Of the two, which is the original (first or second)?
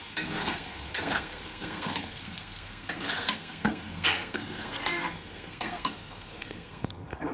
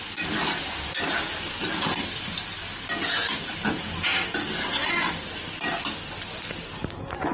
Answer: second